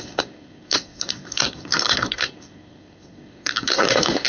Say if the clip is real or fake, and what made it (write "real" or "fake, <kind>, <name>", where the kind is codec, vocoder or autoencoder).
fake, codec, SNAC